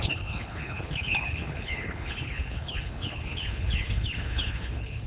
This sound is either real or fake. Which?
fake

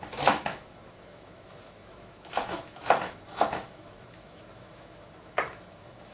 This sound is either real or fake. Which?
fake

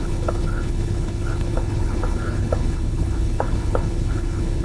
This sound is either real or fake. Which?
fake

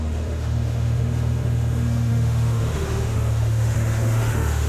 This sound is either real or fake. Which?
fake